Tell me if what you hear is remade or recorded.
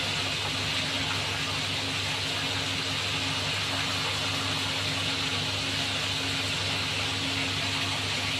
recorded